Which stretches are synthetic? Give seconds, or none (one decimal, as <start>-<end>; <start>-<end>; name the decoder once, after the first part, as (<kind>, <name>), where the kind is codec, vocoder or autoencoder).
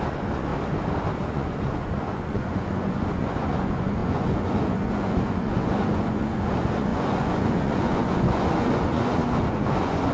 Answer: 0.0-0.5 (vocoder, Vocos); 1.2-10.1